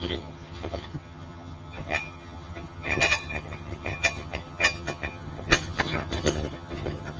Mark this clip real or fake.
fake